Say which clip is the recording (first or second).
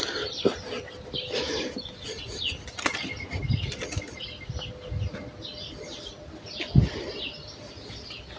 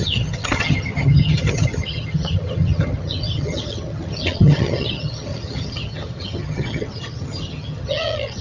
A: first